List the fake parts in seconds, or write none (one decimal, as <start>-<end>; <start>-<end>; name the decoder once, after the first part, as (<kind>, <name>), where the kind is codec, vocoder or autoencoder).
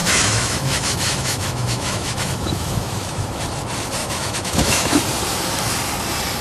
0.0-3.4 (autoencoder, DAC-VAE); 4.0-5.0